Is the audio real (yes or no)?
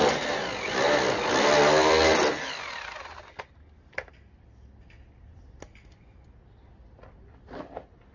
yes